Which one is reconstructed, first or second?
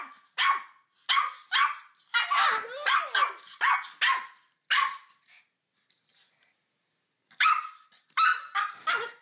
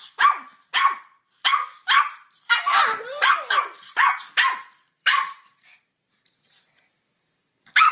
second